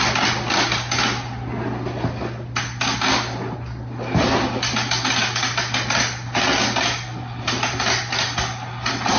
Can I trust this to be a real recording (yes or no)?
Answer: yes